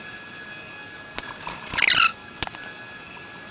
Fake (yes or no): no